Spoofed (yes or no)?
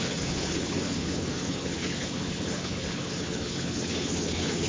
yes